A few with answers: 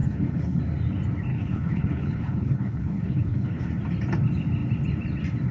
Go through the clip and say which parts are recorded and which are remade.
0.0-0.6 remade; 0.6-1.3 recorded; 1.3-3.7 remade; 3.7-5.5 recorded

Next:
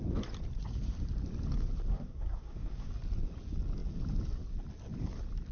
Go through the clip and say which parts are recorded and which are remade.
0.0-1.9 recorded; 1.9-2.9 remade; 2.9-5.5 recorded

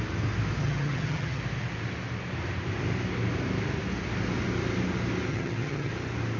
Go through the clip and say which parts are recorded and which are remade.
0.0-0.6 recorded; 0.6-1.4 remade; 1.4-5.3 recorded; 5.3-5.9 remade; 5.9-6.4 recorded

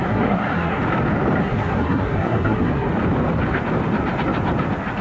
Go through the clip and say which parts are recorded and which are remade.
0.0-0.8 remade; 0.8-1.4 recorded; 1.4-2.9 remade; 2.9-5.0 recorded

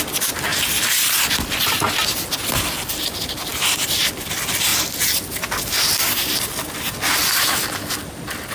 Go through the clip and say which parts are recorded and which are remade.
0.0-0.5 recorded; 0.5-1.9 remade; 1.9-3.5 recorded; 3.5-4.0 remade; 4.0-4.7 recorded; 4.7-6.5 remade; 6.5-8.5 recorded